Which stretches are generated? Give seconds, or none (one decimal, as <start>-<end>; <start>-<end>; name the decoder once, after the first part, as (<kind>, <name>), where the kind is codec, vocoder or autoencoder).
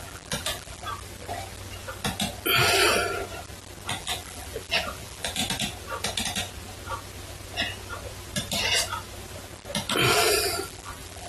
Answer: 0.0-0.8 (vocoder, BigVGAN v2); 4.0-5.4; 10.3-11.3